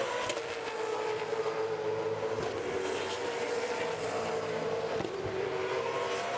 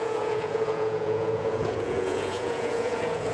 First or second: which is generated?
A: second